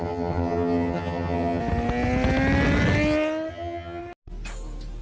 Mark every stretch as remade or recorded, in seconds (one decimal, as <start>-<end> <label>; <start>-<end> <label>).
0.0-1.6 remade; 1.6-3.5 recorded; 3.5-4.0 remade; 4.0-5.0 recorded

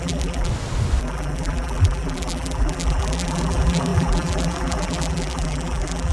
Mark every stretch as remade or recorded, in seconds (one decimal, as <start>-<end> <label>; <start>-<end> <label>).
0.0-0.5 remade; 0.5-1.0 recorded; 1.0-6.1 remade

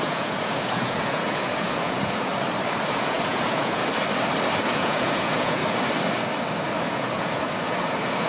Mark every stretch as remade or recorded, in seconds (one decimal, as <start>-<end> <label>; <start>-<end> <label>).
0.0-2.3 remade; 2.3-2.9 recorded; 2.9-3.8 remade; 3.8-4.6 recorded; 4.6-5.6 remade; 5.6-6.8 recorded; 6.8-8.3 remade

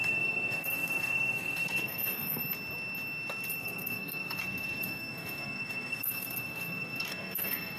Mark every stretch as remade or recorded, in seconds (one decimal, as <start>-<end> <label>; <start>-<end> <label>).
0.0-2.4 remade; 2.4-3.6 recorded; 3.6-7.8 remade

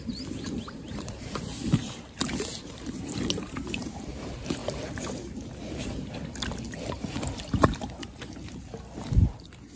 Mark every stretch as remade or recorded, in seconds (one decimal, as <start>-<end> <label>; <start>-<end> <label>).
0.0-1.8 remade; 1.8-2.7 recorded; 2.7-4.6 remade; 4.6-5.8 recorded; 5.8-6.2 remade; 6.2-9.8 recorded